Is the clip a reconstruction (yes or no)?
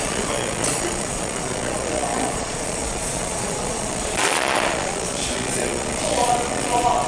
yes